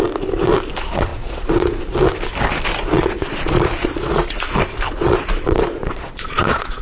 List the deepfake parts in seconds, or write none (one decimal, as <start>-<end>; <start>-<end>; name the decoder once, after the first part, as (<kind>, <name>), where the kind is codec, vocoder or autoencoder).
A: 1.1-1.8 (vocoder, Vocos); 3.2-4.4; 5.0-6.8